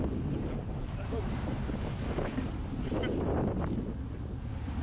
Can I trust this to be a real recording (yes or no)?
yes